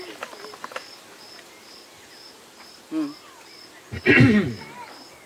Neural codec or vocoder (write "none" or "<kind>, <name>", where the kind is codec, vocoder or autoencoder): none